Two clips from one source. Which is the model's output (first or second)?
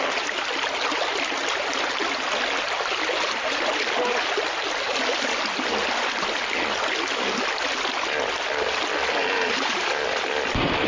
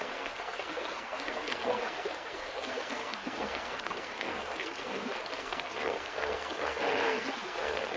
second